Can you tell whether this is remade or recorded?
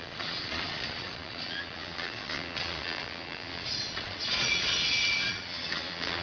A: remade